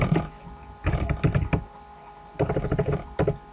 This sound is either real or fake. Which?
real